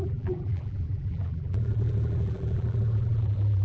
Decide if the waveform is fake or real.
fake